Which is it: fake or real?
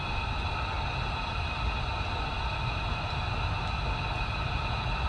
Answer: real